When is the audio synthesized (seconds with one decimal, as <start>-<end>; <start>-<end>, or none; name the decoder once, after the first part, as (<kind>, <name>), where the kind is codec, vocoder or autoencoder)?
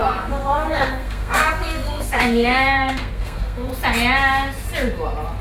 0.0-3.7 (codec, SNAC)